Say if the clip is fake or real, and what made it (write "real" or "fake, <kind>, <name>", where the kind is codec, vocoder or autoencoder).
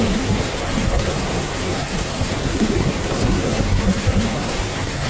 fake, codec, SNAC